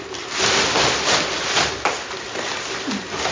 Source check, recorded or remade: recorded